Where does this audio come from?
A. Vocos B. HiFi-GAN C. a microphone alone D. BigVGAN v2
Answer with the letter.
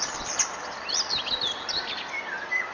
C